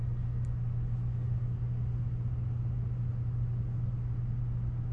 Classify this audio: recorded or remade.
recorded